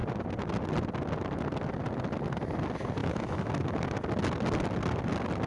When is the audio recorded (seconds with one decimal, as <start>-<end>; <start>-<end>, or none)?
0.0-3.0; 3.5-5.5